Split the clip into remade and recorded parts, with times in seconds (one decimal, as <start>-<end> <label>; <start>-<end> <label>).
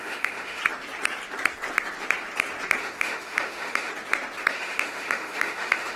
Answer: 0.0-0.6 remade; 0.6-2.8 recorded; 2.8-3.9 remade; 3.9-4.5 recorded; 4.5-6.0 remade